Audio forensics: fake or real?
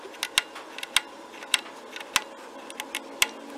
real